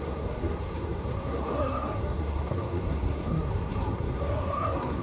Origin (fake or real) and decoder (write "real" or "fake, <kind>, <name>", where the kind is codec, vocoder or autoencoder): fake, codec, SNAC